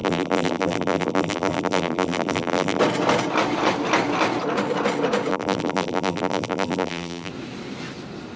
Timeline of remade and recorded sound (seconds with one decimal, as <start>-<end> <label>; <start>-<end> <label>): 0.0-2.8 remade; 2.8-5.3 recorded; 5.3-7.3 remade; 7.3-8.4 recorded